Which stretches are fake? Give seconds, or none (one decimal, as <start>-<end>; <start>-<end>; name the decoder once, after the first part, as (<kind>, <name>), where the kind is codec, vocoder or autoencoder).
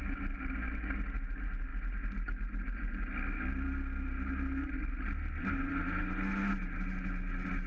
none